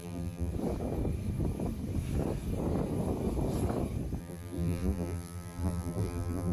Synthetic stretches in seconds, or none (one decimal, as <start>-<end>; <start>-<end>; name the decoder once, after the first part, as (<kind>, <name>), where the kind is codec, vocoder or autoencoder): 0.0-0.5 (vocoder, BigVGAN v2); 4.2-6.5